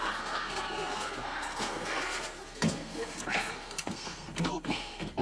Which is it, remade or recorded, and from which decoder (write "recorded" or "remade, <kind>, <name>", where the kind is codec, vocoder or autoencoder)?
remade, codec, SNAC